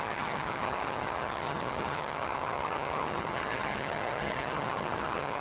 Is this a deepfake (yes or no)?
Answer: yes